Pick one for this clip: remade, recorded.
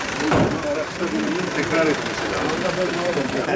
remade